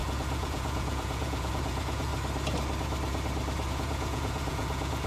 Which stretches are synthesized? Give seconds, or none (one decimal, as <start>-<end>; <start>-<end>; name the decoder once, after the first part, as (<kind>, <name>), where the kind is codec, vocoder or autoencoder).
0.0-2.1 (vocoder, Vocos); 3.7-5.1